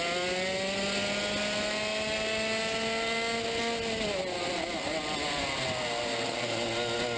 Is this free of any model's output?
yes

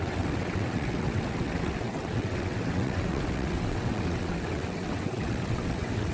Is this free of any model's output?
no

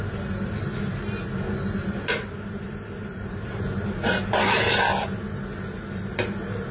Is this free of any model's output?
yes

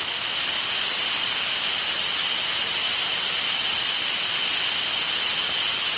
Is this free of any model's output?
yes